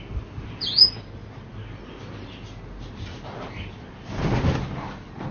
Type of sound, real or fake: real